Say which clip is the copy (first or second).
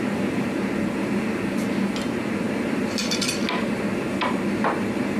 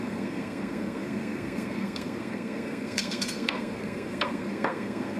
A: second